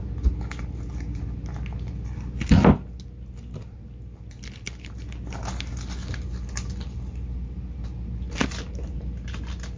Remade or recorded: recorded